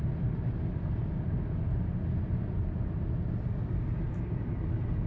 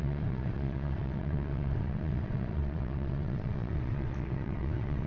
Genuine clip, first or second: first